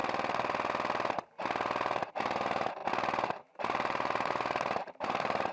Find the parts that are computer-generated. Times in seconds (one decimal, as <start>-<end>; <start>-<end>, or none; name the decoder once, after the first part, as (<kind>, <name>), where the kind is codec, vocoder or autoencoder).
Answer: 2.1-2.8 (vocoder, BigVGAN v2); 3.4-5.5